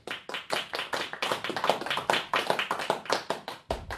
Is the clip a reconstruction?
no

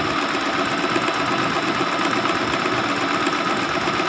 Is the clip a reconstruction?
no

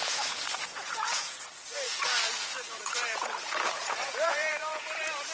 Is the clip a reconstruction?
yes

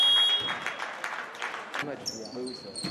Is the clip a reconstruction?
no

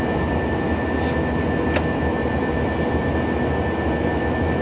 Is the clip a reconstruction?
no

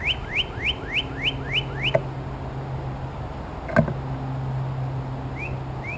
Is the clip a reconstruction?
no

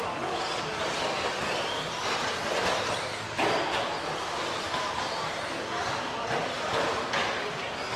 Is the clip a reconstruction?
no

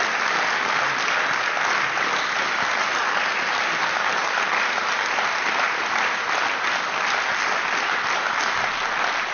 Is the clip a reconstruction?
no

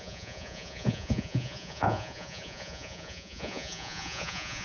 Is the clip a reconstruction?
yes